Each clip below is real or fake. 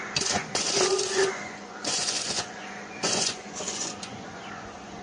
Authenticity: fake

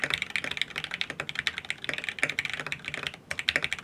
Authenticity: real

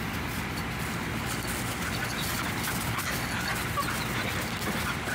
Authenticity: real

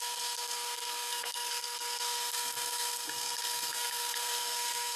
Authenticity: fake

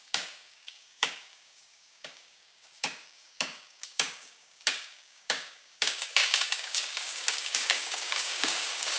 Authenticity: fake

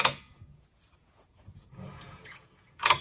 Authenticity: fake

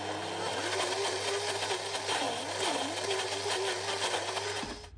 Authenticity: real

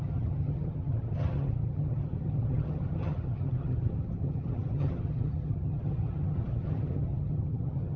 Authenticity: fake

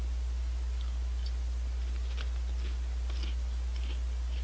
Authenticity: real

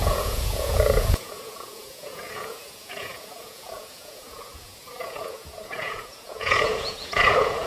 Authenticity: fake